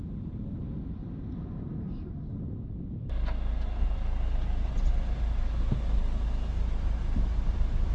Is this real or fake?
real